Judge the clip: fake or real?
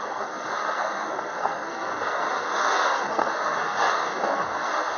fake